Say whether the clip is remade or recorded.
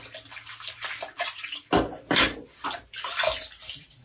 recorded